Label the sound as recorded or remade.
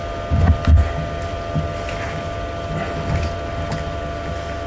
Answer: recorded